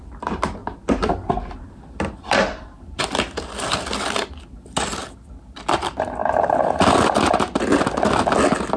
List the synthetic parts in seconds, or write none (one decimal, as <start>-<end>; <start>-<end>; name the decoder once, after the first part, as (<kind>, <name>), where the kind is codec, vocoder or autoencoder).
none